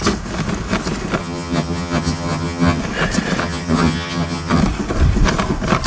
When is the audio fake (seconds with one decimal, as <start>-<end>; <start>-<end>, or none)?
1.2-2.8; 3.4-4.6